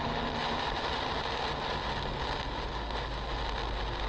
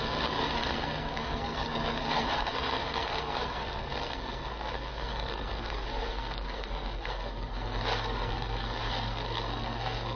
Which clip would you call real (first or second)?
first